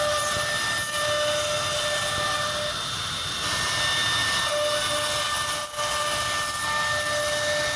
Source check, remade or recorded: recorded